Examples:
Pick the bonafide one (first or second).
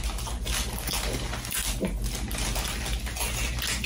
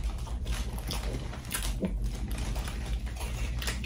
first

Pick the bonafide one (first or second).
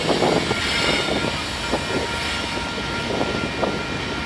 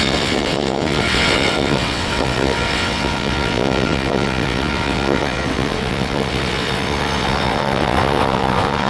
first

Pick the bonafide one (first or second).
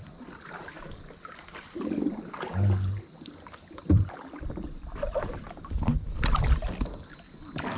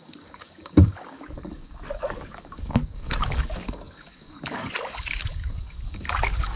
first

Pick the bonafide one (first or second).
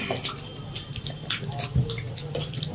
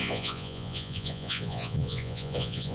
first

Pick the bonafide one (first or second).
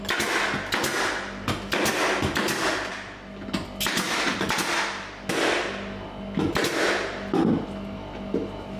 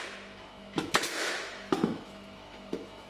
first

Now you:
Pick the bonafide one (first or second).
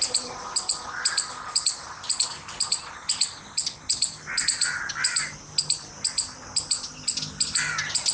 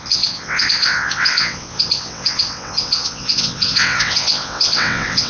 first